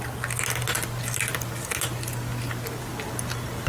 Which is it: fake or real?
real